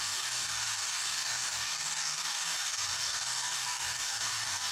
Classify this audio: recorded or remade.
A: remade